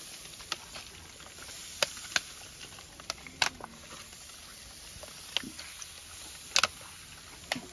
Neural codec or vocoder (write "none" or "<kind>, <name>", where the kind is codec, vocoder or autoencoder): none